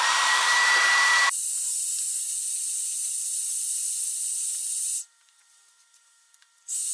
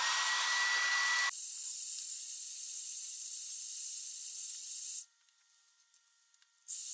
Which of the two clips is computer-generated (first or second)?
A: first